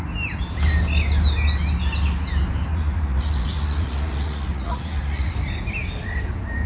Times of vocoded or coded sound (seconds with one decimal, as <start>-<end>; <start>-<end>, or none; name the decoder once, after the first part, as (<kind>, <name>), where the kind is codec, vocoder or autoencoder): 2.7-5.3 (vocoder, Vocos)